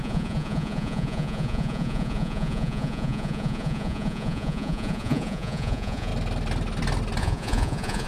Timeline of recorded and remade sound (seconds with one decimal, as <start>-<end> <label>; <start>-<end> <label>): 0.0-6.1 remade; 6.1-7.2 recorded; 7.2-8.1 remade